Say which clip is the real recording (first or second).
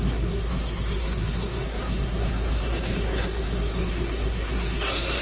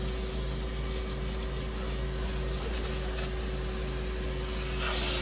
second